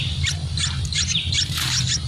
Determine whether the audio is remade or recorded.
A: recorded